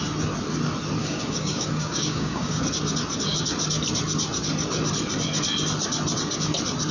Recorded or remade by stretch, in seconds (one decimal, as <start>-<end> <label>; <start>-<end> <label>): 0.0-1.0 recorded; 1.0-2.6 remade; 2.6-6.9 recorded